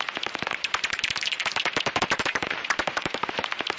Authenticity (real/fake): fake